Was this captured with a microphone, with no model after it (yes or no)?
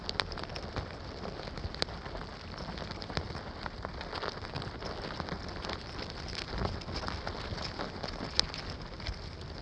yes